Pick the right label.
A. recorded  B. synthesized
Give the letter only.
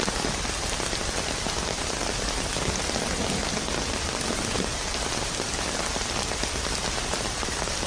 A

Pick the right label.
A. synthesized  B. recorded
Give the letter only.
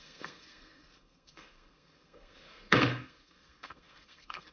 A